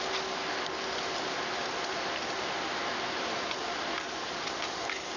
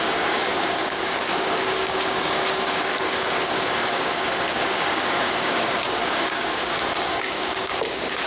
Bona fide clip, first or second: first